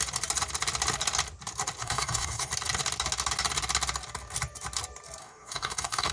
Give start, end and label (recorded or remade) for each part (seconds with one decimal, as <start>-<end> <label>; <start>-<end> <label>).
0.0-1.8 recorded; 1.8-2.5 remade; 2.5-5.2 recorded; 5.2-6.1 remade